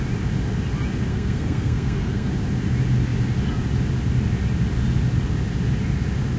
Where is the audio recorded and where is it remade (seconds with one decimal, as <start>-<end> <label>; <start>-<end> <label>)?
0.0-1.1 recorded; 1.1-2.3 remade; 2.3-6.4 recorded